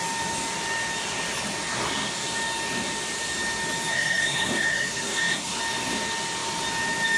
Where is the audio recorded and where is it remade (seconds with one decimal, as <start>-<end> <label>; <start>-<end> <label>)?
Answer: 0.0-3.9 recorded; 3.9-5.6 remade; 5.6-7.2 recorded